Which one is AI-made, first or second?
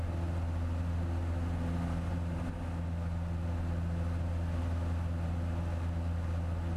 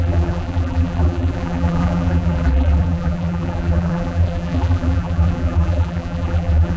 second